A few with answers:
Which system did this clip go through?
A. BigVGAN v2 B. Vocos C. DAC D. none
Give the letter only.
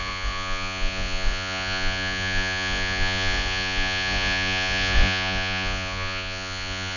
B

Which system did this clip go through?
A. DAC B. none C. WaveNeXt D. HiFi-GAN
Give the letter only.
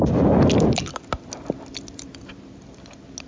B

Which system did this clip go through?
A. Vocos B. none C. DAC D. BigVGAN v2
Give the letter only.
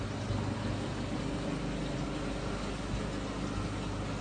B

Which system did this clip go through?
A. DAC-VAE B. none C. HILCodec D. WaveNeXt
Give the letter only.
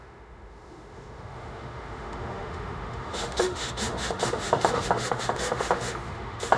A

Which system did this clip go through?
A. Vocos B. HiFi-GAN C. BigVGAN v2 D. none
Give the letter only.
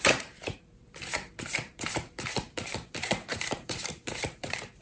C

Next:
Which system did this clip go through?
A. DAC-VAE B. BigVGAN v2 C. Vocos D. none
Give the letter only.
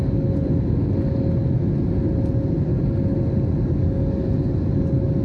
D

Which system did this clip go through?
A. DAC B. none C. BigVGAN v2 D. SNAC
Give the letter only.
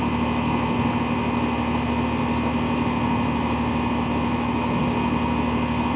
B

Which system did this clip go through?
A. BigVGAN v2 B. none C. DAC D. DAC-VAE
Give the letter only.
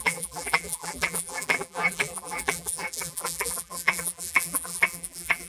A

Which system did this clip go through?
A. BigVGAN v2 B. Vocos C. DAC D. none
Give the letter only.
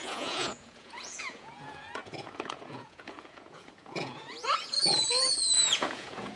B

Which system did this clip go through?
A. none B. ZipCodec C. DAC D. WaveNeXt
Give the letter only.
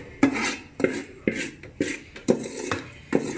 A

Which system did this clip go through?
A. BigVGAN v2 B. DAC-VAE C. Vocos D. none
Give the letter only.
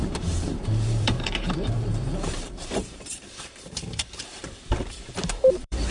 A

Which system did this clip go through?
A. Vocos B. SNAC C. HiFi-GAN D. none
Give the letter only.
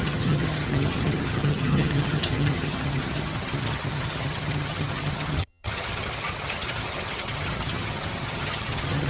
C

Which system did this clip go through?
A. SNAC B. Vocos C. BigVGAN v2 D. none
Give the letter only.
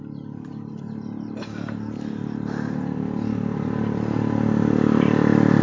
D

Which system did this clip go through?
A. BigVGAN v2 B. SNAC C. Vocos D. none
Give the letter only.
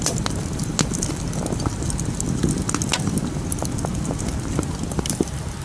D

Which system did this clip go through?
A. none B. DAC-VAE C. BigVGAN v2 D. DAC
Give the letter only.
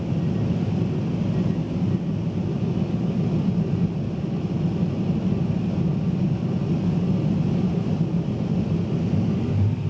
A